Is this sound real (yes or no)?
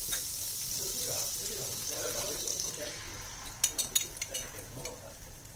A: yes